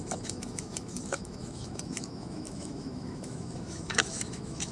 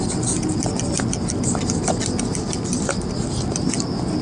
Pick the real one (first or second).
second